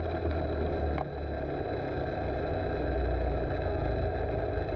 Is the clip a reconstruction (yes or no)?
no